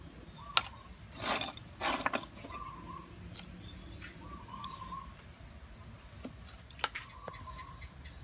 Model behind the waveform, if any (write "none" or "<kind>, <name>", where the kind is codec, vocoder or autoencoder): none